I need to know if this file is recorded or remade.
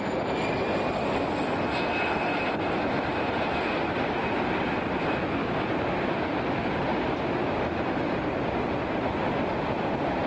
recorded